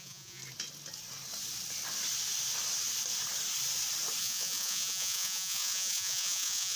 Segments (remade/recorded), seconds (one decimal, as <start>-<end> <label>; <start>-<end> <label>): 0.0-0.4 remade; 0.4-4.2 recorded; 4.2-6.8 remade